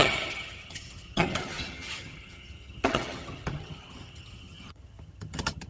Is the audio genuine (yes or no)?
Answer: no